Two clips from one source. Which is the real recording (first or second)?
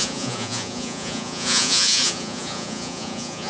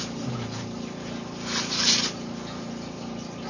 second